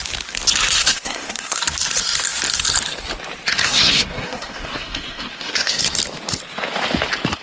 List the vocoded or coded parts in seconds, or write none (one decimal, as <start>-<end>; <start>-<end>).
0.8-1.6; 3.6-5.8